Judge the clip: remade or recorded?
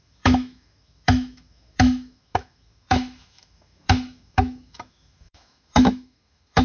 remade